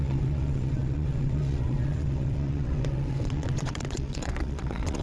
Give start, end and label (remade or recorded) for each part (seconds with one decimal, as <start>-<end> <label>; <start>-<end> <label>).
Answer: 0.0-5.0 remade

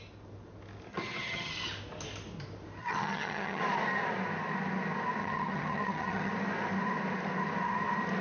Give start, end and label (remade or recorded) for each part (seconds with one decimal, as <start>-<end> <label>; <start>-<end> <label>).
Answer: 0.0-0.9 recorded; 0.9-1.5 remade; 1.5-2.8 recorded; 2.8-3.6 remade; 3.6-5.2 recorded; 5.2-6.3 remade; 6.3-8.2 recorded

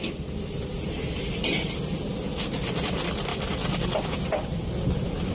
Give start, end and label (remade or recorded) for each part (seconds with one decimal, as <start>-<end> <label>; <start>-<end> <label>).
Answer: 0.0-5.3 recorded

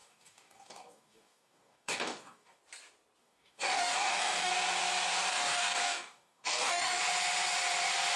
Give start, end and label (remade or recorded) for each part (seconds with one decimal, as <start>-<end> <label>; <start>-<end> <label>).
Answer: 0.0-2.6 remade; 2.6-3.2 recorded; 3.2-4.5 remade; 4.5-5.3 recorded; 5.3-7.0 remade; 7.0-8.2 recorded